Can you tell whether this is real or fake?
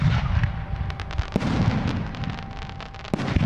real